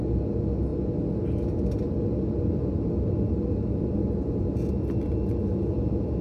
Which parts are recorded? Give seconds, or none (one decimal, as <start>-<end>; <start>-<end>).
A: 0.0-6.2